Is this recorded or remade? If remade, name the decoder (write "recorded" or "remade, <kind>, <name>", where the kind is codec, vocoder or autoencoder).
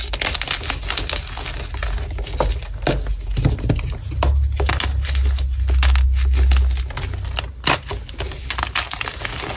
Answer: recorded